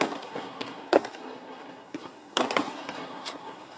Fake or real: fake